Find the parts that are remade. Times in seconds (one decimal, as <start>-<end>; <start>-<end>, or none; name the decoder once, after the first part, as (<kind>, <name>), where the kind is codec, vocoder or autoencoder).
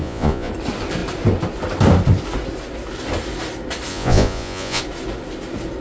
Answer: 0.0-0.5 (vocoder, Vocos); 3.9-4.8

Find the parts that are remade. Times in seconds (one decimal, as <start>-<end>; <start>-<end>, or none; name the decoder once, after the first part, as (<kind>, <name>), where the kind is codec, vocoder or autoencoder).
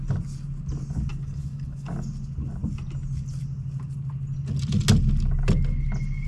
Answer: 1.1-2.1 (codec, DAC)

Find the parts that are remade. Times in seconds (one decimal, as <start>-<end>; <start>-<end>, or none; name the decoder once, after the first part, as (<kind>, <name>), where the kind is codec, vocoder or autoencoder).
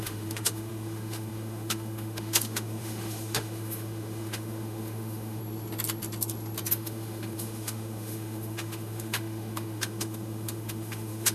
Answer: 0.0-5.4 (autoencoder, DAC-VAE); 6.7-11.3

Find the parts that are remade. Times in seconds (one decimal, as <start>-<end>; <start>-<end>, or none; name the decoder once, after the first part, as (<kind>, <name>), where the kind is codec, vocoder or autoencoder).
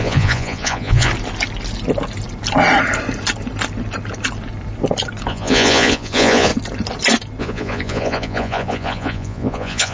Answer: 0.0-1.1 (vocoder, Vocos); 5.3-6.5; 7.4-9.9